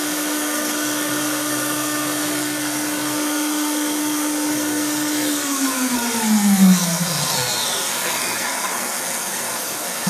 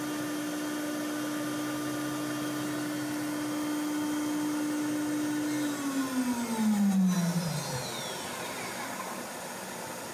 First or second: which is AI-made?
first